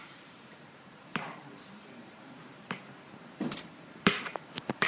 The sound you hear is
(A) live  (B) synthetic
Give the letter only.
B